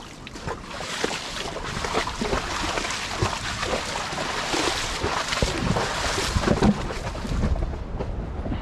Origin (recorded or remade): recorded